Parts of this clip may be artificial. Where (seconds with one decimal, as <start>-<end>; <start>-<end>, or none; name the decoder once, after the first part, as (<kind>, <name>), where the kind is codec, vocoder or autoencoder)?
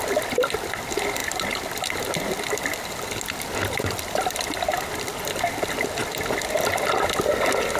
none